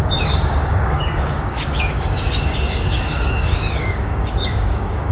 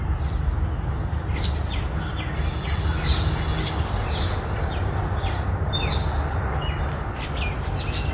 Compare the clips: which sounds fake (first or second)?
first